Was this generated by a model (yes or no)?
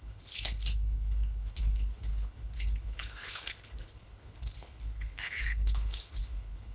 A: yes